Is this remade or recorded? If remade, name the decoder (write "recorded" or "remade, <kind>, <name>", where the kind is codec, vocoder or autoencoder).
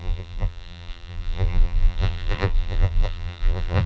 remade, vocoder, BigVGAN v2